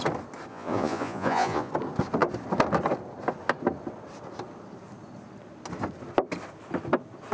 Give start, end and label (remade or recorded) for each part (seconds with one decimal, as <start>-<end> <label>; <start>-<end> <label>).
0.0-0.5 recorded; 0.5-1.7 remade; 1.7-7.3 recorded